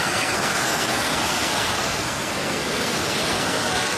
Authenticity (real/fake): fake